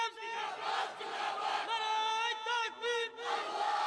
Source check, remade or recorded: recorded